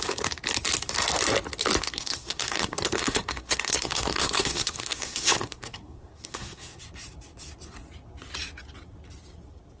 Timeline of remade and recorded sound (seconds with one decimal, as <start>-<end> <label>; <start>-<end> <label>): 0.0-1.8 recorded; 1.8-6.8 remade; 6.8-9.8 recorded